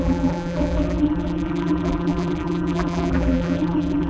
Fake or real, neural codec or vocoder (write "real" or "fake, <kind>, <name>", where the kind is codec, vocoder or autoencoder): fake, vocoder, BigVGAN v2